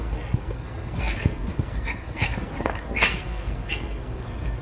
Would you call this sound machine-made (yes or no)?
yes